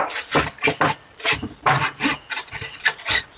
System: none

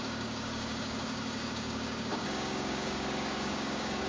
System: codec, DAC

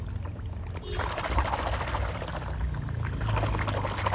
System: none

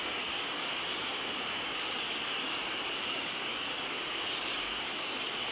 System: codec, DAC